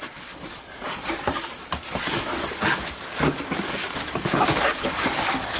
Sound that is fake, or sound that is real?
fake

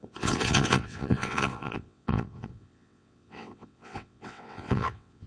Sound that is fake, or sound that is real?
fake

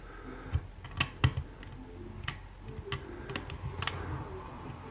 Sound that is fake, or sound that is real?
real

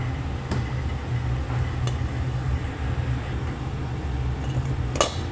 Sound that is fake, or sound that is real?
real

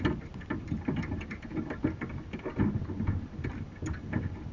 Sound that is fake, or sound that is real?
real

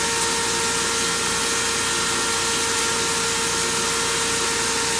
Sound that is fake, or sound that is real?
real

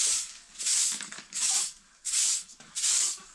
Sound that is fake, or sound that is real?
fake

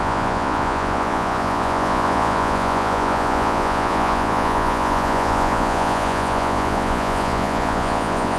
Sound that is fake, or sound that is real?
fake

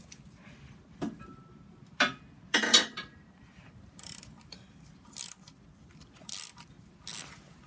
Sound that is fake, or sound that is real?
real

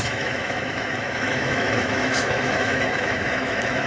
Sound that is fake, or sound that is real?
fake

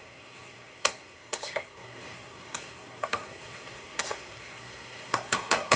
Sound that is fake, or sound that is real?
fake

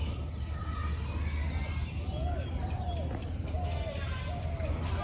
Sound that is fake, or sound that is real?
real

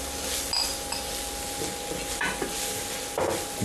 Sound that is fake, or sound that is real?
real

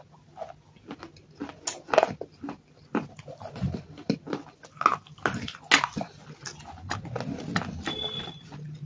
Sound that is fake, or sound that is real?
real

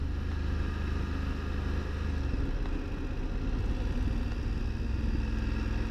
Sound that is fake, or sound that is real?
real